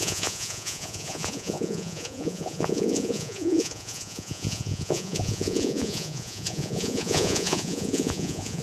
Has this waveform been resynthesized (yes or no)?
yes